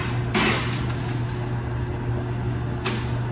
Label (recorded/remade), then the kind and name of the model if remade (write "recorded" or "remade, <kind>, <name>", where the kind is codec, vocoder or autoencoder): recorded